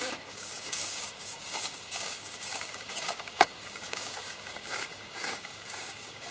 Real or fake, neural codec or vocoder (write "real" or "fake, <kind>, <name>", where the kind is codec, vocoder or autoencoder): fake, codec, DAC